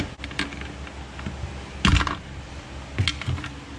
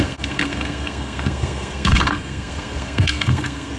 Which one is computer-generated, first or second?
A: second